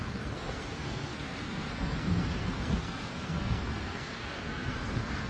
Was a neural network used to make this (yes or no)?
yes